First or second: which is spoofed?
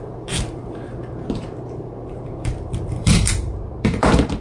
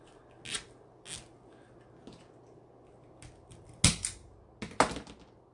first